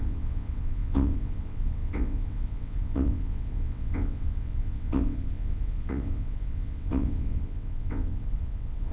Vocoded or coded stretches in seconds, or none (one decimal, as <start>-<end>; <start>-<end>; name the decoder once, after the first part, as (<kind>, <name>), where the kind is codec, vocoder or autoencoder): 0.0-8.9 (vocoder, WaveNeXt)